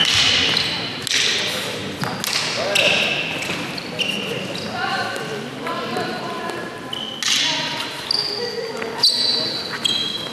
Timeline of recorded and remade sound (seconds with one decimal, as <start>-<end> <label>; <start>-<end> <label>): 0.0-10.3 recorded